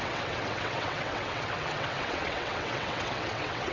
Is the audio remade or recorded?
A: remade